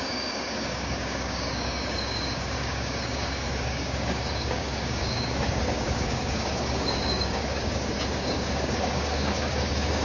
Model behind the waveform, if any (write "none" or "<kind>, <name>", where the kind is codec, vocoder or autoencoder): codec, DAC